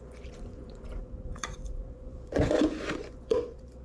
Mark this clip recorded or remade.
remade